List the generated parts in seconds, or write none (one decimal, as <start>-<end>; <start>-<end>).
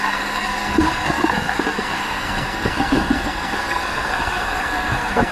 0.0-5.3